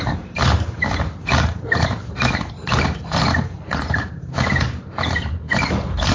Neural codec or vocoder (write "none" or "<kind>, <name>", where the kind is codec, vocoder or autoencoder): vocoder, BigVGAN v2